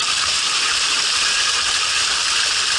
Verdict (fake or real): fake